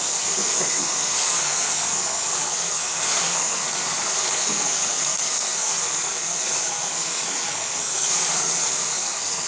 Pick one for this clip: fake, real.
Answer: fake